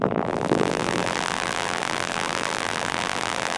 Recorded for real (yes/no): no